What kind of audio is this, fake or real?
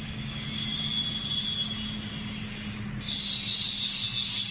real